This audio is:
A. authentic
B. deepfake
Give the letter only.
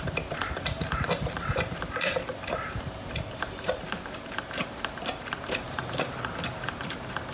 B